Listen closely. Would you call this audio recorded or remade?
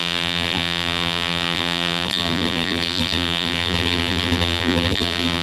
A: remade